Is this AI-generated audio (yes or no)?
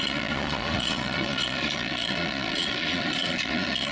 yes